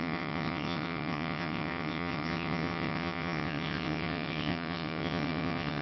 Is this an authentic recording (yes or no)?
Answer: no